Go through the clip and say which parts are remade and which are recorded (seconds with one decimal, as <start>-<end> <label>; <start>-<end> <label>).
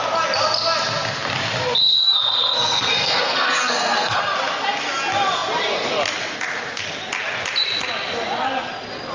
0.0-1.8 recorded; 1.8-4.2 remade; 4.2-9.1 recorded